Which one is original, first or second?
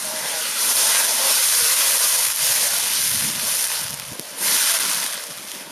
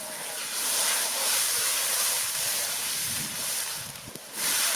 first